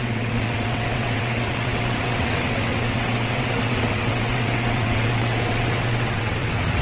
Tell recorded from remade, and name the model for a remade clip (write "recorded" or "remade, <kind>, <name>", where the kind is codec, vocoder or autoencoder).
remade, vocoder, WaveNeXt